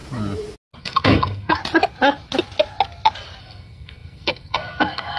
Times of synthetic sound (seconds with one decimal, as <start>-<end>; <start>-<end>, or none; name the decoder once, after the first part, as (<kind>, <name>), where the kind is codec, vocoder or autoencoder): 0.8-1.6 (codec, SNAC); 3.4-5.2